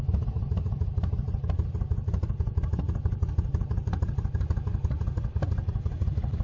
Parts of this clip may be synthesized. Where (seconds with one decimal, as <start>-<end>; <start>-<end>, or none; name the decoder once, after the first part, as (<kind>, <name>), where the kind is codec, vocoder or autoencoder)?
none